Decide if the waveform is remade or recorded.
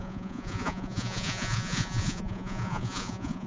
remade